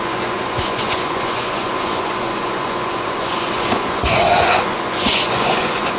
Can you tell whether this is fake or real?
fake